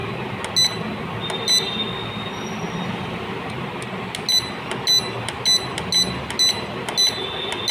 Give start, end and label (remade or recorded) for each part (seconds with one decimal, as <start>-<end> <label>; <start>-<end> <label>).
0.0-7.7 recorded